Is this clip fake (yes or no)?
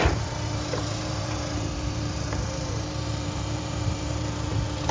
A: yes